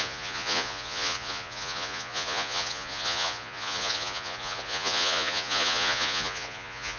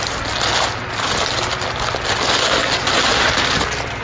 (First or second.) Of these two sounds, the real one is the second